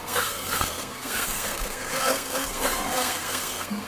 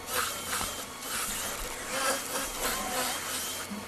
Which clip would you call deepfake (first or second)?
first